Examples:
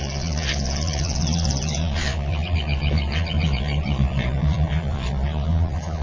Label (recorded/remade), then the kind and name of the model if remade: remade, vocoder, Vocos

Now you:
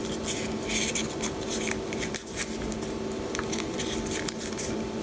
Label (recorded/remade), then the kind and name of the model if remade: recorded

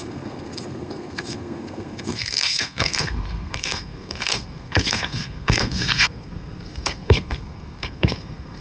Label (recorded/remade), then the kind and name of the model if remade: remade, codec, SNAC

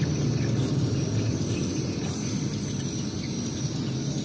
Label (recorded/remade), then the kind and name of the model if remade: recorded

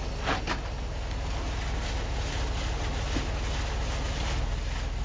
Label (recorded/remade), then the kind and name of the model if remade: recorded